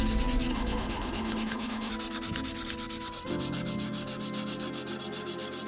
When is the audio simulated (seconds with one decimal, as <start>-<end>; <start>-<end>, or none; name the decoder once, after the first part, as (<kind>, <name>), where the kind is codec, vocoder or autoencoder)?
0.5-1.9 (autoencoder, DAC-VAE)